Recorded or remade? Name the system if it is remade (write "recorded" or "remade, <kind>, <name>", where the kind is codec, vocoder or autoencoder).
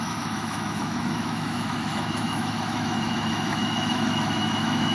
remade, autoencoder, DAC-VAE